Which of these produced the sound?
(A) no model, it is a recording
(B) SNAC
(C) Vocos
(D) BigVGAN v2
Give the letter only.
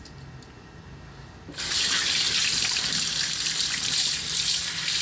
A